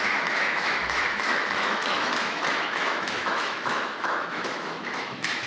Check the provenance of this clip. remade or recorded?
remade